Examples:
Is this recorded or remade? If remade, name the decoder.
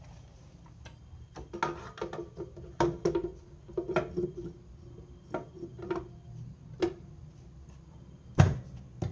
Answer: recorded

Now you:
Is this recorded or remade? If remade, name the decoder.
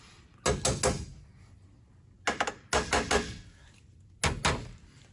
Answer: recorded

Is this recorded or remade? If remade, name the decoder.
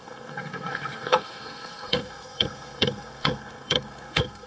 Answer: remade, codec, SNAC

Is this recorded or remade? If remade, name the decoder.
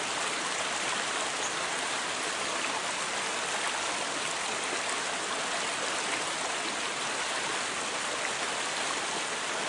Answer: recorded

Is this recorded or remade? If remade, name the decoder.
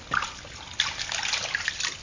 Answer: recorded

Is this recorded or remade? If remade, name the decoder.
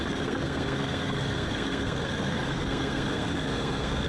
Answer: remade, codec, SNAC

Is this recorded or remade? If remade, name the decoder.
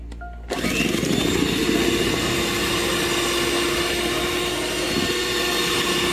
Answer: recorded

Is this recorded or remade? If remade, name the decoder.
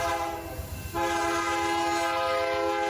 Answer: recorded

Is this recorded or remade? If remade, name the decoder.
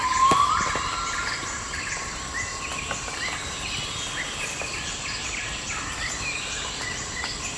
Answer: recorded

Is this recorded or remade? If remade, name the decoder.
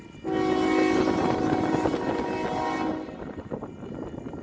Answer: recorded